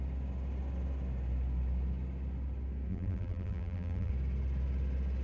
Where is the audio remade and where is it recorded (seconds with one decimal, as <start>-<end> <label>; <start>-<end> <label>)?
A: 0.0-2.9 recorded; 2.9-4.1 remade; 4.1-5.2 recorded